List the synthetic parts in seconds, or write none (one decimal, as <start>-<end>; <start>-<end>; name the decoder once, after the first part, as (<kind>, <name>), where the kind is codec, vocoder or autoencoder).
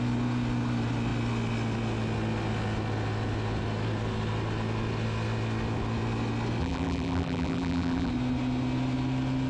6.6-8.1 (vocoder, BigVGAN v2)